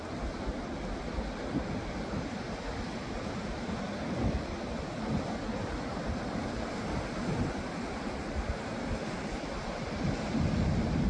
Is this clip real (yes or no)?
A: no